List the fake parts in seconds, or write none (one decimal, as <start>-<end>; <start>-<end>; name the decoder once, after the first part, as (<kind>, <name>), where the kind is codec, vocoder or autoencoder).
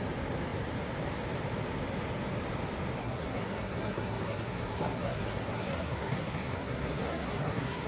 3.0-7.9 (codec, SNAC)